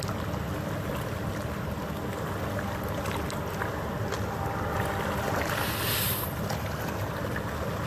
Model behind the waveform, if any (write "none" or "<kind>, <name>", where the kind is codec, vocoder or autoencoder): none